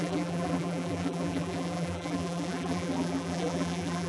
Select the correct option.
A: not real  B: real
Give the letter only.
A